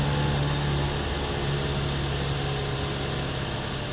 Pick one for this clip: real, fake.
real